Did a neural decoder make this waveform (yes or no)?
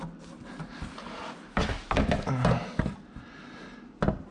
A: no